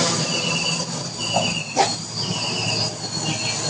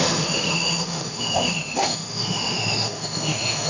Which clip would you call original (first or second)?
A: first